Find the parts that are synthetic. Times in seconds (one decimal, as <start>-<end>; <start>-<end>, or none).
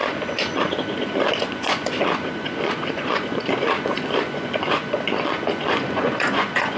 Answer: 0.0-6.8